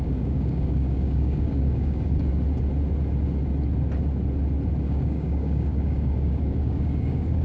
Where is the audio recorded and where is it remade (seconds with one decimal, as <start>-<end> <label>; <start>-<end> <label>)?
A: 0.0-2.3 remade; 2.3-4.8 recorded; 4.8-7.4 remade